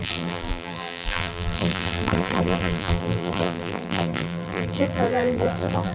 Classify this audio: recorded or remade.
remade